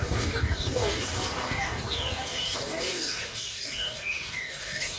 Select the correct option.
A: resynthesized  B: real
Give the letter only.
A